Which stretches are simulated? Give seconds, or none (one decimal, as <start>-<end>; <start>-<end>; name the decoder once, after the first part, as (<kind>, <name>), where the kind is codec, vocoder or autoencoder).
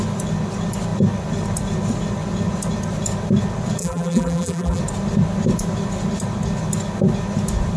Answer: 3.8-4.8 (vocoder, BigVGAN v2)